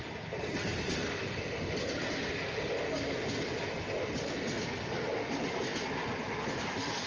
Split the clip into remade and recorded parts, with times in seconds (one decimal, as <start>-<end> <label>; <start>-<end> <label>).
0.0-7.1 recorded